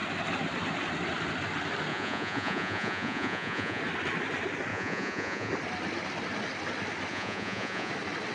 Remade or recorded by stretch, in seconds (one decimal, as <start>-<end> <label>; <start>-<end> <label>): 0.0-1.9 recorded; 1.9-3.8 remade; 3.8-4.7 recorded; 4.7-5.5 remade; 5.5-7.1 recorded; 7.1-7.9 remade; 7.9-8.3 recorded